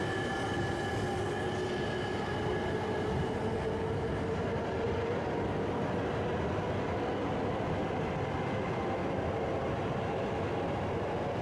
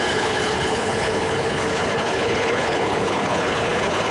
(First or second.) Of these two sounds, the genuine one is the first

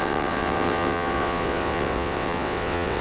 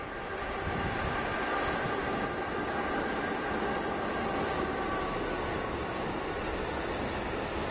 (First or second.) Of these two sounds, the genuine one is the second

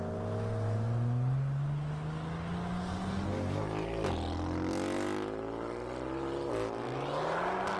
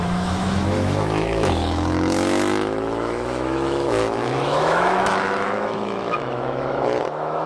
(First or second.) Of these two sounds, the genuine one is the first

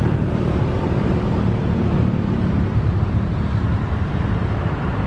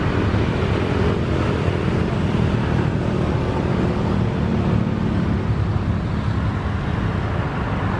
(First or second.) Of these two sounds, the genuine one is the second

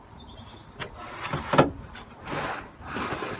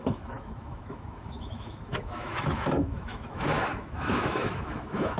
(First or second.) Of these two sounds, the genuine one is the first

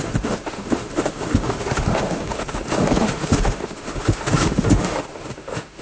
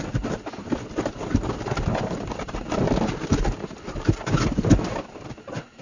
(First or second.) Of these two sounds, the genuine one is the second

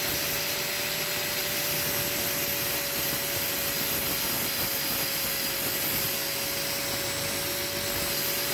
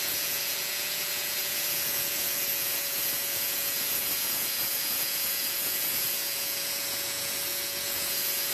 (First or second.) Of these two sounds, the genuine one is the first